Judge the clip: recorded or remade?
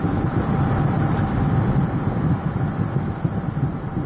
recorded